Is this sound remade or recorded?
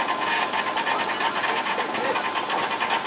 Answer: recorded